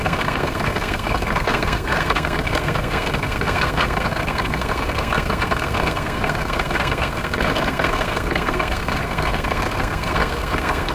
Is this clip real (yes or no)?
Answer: no